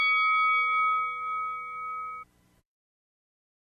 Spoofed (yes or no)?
no